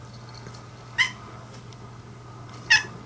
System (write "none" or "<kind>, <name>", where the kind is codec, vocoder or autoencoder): none